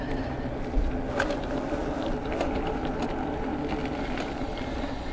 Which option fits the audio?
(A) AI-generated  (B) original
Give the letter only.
B